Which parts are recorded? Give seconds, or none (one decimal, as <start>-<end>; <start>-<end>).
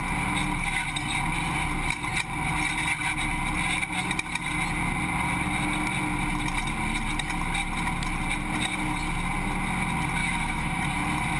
0.0-10.2; 10.8-11.4